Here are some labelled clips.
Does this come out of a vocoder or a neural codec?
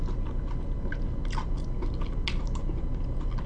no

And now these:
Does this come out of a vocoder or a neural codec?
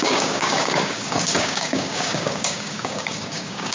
yes